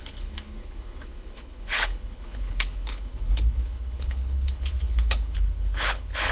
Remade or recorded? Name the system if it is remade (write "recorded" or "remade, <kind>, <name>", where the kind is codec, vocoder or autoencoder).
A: remade, codec, HILCodec